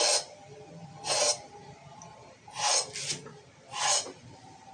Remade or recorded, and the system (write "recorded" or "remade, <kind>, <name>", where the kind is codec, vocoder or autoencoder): recorded